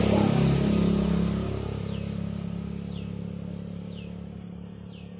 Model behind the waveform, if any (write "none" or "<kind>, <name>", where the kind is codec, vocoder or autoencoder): none